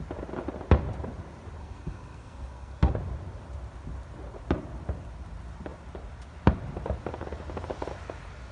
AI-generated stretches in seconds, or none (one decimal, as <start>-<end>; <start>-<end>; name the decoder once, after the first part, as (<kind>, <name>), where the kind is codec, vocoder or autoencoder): 1.6-2.9 (codec, SNAC)